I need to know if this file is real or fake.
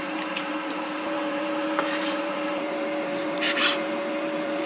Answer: fake